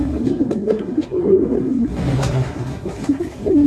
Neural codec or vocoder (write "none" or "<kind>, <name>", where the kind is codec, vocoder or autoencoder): codec, SNAC